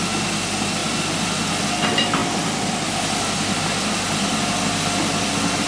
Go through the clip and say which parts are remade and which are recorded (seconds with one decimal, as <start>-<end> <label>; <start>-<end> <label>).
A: 0.0-5.7 recorded